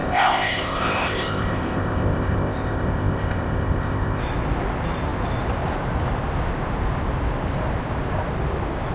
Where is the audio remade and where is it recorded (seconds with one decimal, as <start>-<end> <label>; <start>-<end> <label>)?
0.0-4.2 remade; 4.2-8.9 recorded